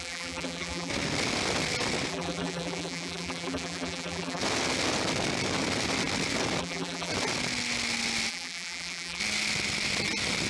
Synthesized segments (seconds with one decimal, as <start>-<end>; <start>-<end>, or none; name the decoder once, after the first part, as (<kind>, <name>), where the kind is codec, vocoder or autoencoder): 0.0-0.9 (vocoder, BigVGAN v2); 2.1-4.4; 6.6-7.1; 8.3-9.2